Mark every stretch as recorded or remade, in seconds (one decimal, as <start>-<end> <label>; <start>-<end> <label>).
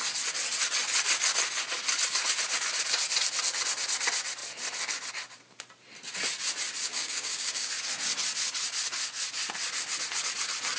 0.0-6.9 recorded; 6.9-7.7 remade; 7.7-10.8 recorded